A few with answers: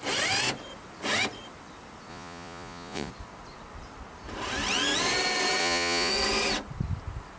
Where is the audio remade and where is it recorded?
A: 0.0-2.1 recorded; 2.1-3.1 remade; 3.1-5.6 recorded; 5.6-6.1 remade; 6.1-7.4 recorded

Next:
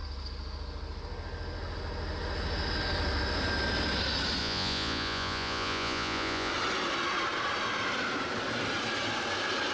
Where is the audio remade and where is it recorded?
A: 0.0-4.4 recorded; 4.4-6.5 remade; 6.5-9.7 recorded

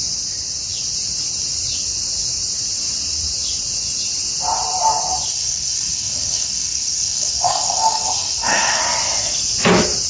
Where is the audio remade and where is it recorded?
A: 0.0-5.3 recorded; 5.3-8.8 remade; 8.8-10.1 recorded

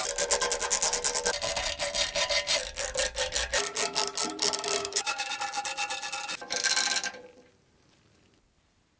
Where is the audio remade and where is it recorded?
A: 0.0-4.8 recorded; 4.8-5.3 remade; 5.3-9.0 recorded

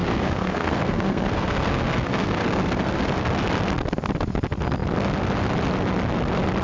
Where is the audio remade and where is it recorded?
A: 0.0-3.0 remade; 3.0-6.6 recorded